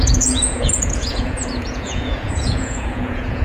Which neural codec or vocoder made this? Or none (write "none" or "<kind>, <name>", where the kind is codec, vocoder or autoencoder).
vocoder, Vocos